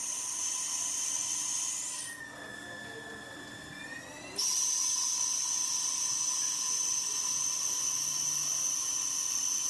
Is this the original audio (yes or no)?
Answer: yes